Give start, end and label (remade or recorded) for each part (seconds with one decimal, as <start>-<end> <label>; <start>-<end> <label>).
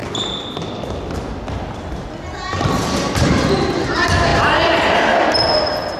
0.0-6.0 recorded